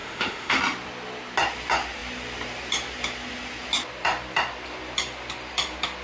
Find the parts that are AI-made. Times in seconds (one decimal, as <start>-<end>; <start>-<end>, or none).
0.0-0.6

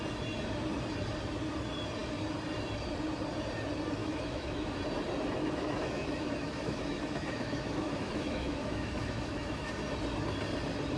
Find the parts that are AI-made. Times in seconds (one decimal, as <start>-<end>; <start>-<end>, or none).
4.0-4.8; 5.4-9.7

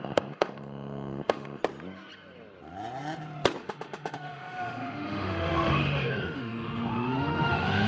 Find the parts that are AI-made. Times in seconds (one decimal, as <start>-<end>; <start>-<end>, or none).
0.0-1.6; 3.6-7.9

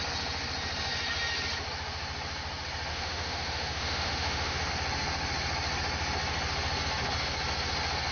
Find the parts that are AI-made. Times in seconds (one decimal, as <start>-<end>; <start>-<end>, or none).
2.9-4.7

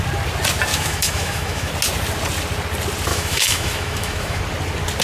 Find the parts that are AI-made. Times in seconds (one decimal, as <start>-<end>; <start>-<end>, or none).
0.7-1.7; 3.1-4.4

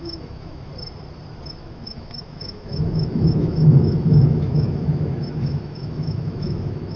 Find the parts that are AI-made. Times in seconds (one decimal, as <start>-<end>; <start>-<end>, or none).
0.0-0.7; 1.6-7.0